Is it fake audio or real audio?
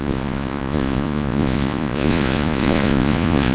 fake